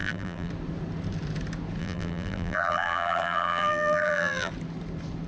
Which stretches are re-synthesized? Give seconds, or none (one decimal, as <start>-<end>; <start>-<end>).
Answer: 0.0-0.5; 1.8-4.5